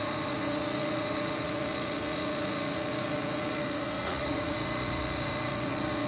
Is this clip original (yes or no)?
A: no